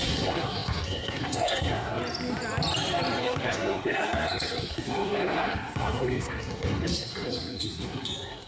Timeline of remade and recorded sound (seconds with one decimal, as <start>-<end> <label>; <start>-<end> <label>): 0.0-2.0 remade; 2.0-3.2 recorded; 3.2-8.5 remade